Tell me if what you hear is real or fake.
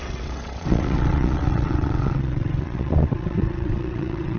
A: fake